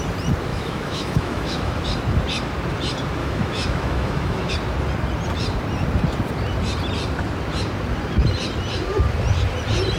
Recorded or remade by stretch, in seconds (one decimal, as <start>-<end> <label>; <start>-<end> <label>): 0.0-0.5 recorded; 0.5-1.8 remade; 1.8-3.2 recorded; 3.2-4.5 remade; 4.5-10.0 recorded